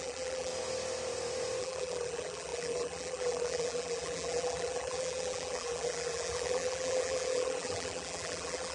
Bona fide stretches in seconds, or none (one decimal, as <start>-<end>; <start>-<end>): 0.5-1.6